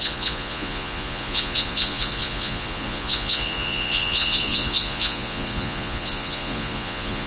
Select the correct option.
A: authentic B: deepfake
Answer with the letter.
B